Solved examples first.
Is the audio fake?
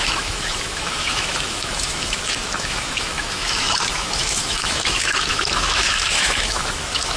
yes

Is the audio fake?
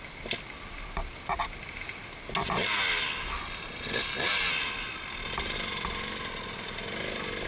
no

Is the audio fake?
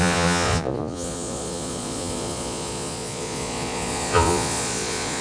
yes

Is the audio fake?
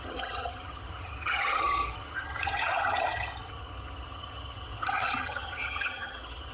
yes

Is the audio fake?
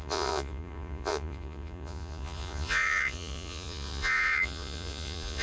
yes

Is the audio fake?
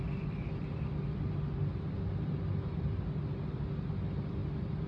no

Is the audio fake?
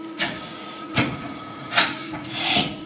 yes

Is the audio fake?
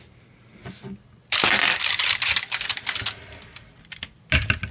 no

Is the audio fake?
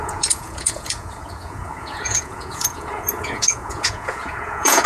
yes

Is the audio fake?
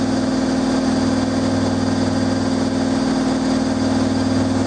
no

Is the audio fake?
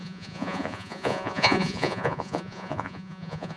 yes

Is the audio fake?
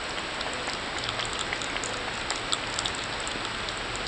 no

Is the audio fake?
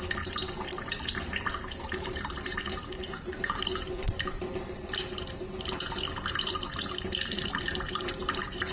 yes